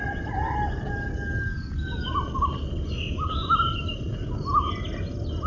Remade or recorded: recorded